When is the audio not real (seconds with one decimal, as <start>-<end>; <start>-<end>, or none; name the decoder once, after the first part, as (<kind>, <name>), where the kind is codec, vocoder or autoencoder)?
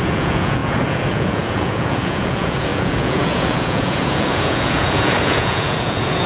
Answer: 0.0-6.3 (vocoder, Vocos)